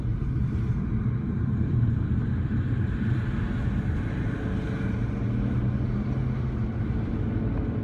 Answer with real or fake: real